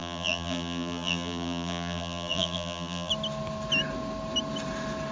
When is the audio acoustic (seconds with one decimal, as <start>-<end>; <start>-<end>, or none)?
3.1-5.1